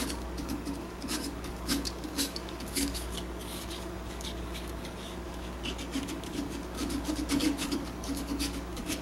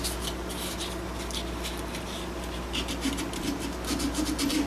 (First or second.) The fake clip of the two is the first